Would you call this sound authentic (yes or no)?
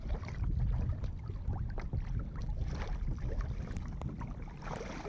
no